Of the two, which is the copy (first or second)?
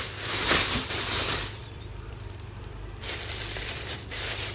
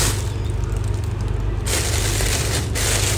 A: first